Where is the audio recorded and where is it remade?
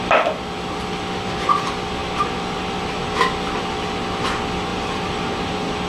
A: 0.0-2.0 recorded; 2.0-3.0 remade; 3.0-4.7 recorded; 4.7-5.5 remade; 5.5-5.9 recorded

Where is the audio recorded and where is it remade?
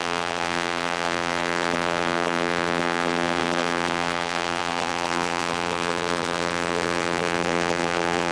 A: 0.0-8.3 remade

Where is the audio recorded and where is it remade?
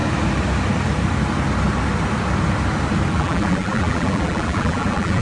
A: 0.0-3.1 recorded; 3.1-5.2 remade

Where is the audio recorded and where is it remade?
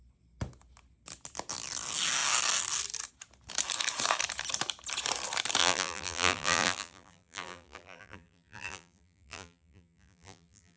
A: 0.0-5.6 recorded; 5.6-10.8 remade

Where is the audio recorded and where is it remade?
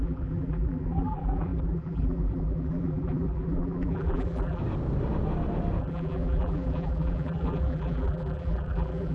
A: 0.0-4.6 remade; 4.6-5.8 recorded; 5.8-9.1 remade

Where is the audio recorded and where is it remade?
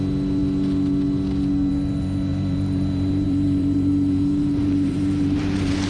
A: 0.0-2.3 recorded; 2.3-5.9 remade